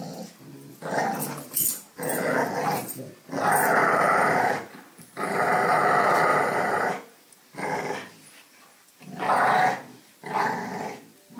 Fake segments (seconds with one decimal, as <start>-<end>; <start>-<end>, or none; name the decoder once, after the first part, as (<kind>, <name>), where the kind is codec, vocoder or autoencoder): 3.8-5.8 (vocoder, BigVGAN v2); 6.3-7.4